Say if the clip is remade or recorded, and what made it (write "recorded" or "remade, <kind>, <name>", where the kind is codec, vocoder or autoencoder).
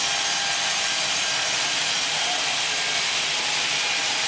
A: recorded